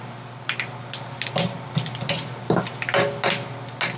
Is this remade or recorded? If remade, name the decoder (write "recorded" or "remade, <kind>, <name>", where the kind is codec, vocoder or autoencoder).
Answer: recorded